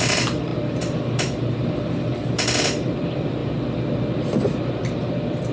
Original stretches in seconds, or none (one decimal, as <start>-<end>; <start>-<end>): 0.0-5.5